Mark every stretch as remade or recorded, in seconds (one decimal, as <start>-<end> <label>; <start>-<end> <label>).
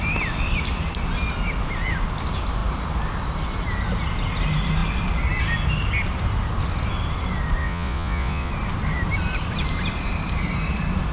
0.0-7.6 recorded; 7.6-8.5 remade; 8.5-11.1 recorded